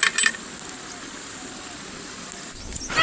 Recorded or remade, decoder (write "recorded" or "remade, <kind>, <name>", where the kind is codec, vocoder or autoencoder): recorded